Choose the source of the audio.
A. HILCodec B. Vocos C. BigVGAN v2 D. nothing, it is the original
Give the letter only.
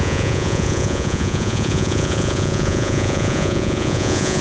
B